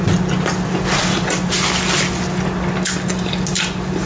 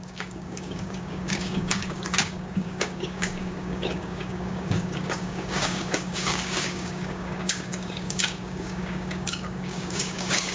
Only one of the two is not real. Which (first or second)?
second